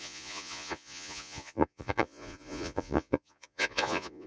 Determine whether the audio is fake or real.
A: fake